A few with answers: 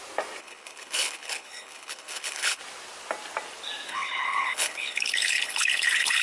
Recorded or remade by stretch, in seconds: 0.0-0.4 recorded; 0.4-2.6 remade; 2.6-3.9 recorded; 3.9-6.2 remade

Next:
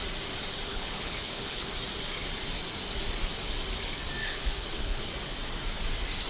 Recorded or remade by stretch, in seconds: 0.0-0.7 recorded; 0.7-1.8 remade; 1.8-4.2 recorded; 4.2-5.1 remade; 5.1-6.3 recorded

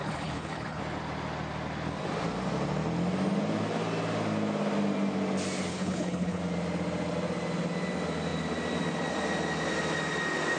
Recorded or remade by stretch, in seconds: 0.0-0.8 remade; 0.8-5.7 recorded; 5.7-6.4 remade; 6.4-10.6 recorded

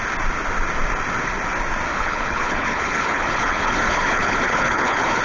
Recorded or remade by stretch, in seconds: 0.0-1.9 recorded; 1.9-5.2 remade

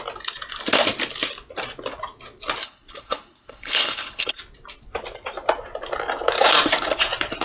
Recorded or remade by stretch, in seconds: 0.0-2.6 recorded; 2.6-4.4 remade; 4.4-7.4 recorded

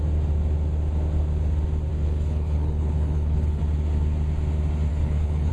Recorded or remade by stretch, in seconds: 0.0-1.9 recorded; 1.9-3.6 remade; 3.6-4.9 recorded; 4.9-5.5 remade

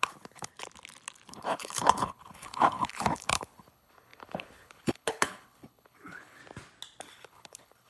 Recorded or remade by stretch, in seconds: 0.0-0.5 remade; 0.5-1.3 recorded; 1.3-6.4 remade; 6.4-7.0 recorded; 7.0-7.9 remade

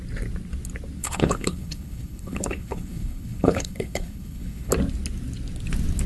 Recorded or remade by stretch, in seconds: 0.0-1.0 recorded; 1.0-4.7 remade; 4.7-6.1 recorded